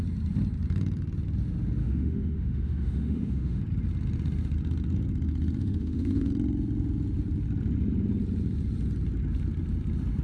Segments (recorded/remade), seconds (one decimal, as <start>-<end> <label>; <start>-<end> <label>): 0.0-1.8 recorded; 1.8-3.6 remade; 3.6-5.6 recorded; 5.6-6.3 remade; 6.3-10.2 recorded